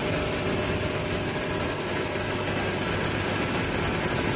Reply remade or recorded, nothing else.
recorded